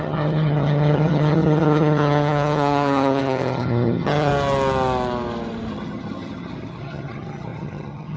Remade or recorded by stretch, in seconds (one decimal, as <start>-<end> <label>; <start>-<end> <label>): 0.0-4.3 remade; 4.3-5.7 recorded; 5.7-8.2 remade

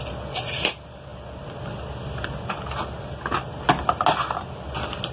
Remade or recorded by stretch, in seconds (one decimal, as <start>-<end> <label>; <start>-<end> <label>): 0.0-5.1 recorded

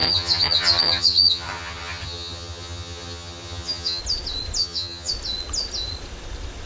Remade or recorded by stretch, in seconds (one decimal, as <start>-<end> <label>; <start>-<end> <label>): 0.0-4.0 remade; 4.0-4.6 recorded; 4.6-5.1 remade; 5.1-6.7 recorded

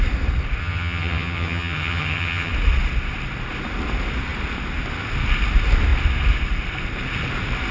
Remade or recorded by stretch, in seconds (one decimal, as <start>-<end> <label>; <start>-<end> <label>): 0.0-0.6 recorded; 0.6-2.5 remade; 2.5-7.7 recorded

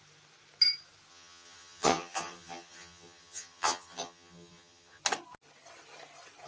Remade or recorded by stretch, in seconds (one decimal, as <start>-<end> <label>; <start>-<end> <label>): 0.0-1.1 recorded; 1.1-5.0 remade; 5.0-6.5 recorded

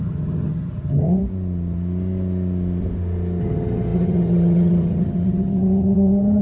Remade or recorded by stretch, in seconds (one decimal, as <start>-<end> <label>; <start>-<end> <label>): 0.0-1.2 remade; 1.2-3.4 recorded; 3.4-6.4 remade

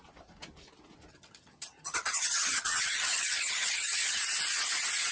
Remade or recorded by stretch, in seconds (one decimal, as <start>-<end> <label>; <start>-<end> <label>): 0.0-1.1 recorded; 1.1-4.2 remade; 4.2-5.1 recorded

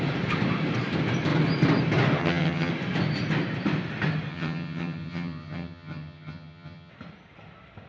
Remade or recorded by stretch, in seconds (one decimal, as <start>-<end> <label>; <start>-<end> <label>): 0.0-2.2 recorded; 2.2-2.7 remade; 2.7-4.3 recorded; 4.3-6.9 remade; 6.9-7.9 recorded